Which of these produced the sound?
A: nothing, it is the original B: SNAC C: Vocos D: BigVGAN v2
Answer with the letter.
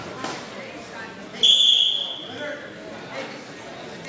A